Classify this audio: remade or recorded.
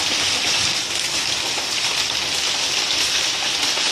recorded